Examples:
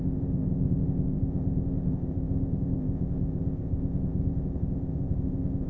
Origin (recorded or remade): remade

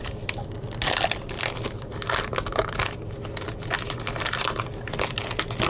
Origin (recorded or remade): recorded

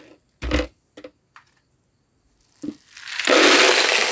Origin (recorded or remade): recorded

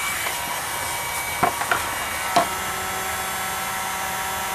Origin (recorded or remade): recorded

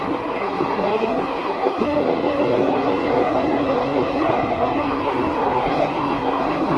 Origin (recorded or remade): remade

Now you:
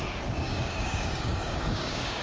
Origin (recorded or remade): remade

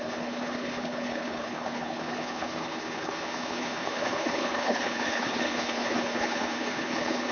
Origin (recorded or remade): remade